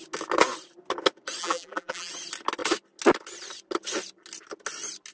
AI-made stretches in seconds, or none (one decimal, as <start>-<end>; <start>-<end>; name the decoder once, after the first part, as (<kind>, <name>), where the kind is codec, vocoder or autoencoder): 1.4-2.1 (vocoder, BigVGAN v2)